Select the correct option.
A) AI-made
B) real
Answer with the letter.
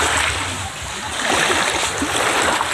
B